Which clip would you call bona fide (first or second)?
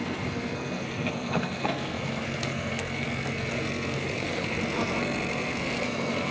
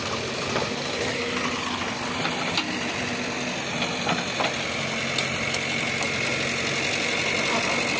second